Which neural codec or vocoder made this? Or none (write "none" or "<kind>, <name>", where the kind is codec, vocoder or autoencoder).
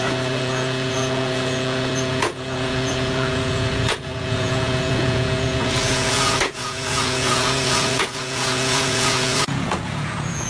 vocoder, Vocos